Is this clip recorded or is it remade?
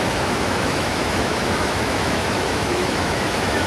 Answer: remade